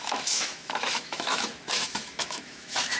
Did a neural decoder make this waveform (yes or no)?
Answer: yes